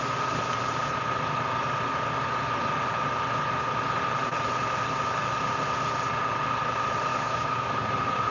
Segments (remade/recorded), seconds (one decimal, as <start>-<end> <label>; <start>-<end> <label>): 0.0-7.1 recorded; 7.1-7.9 remade; 7.9-8.3 recorded